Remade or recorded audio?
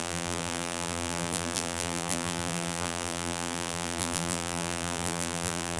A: remade